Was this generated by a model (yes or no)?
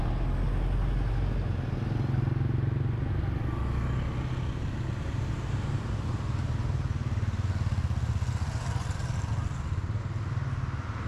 no